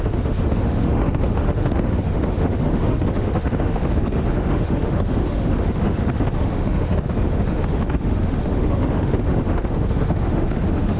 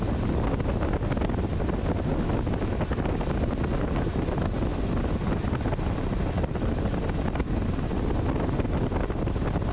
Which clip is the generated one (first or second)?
first